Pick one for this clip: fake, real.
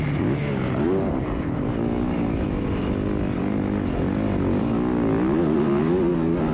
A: real